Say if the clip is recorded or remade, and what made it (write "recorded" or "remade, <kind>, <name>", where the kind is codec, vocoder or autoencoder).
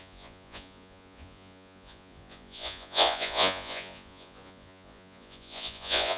remade, vocoder, Vocos